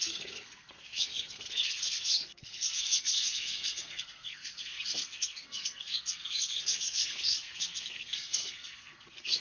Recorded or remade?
remade